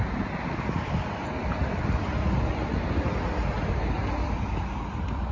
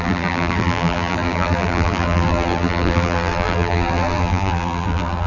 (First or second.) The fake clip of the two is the second